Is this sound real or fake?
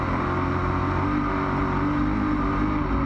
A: real